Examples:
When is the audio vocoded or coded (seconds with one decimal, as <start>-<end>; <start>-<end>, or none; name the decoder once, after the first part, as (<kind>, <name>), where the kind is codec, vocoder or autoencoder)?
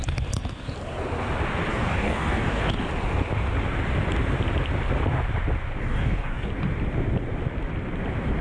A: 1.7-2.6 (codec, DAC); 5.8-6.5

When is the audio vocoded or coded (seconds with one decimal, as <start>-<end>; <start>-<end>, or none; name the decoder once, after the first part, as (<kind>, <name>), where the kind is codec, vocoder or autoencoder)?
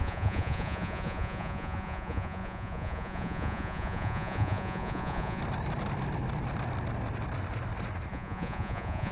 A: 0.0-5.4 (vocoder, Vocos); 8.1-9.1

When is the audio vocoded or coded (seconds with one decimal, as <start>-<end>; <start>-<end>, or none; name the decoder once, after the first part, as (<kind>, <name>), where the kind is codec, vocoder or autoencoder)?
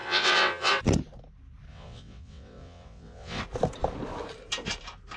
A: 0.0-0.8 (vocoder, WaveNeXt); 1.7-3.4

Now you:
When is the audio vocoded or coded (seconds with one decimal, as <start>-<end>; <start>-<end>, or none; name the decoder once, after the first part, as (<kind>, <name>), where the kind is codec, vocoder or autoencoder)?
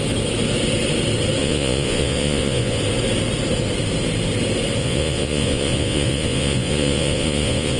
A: 1.4-2.8 (vocoder, Vocos); 4.8-7.8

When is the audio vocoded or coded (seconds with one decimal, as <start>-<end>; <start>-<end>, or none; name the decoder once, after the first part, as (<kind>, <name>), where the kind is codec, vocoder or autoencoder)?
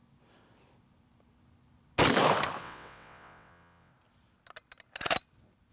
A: 2.6-3.9 (vocoder, WaveNeXt)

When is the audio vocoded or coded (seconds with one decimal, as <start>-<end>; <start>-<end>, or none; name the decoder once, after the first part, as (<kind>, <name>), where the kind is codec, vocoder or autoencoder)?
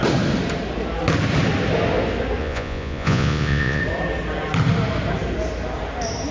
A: 2.4-3.8 (vocoder, Vocos)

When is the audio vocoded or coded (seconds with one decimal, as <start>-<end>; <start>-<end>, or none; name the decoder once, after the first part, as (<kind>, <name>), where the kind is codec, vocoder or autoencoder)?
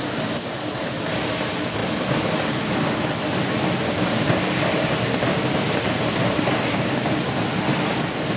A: none